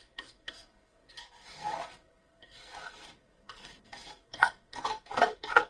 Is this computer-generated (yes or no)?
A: yes